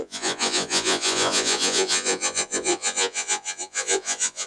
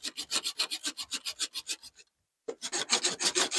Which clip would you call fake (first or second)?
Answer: first